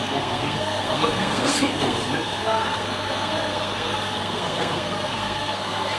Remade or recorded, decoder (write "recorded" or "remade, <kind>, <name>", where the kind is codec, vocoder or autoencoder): remade, codec, SNAC